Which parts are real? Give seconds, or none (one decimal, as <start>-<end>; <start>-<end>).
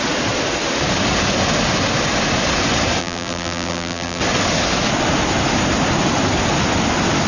0.0-3.0; 4.2-7.3